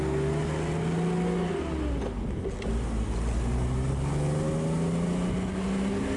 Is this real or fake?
real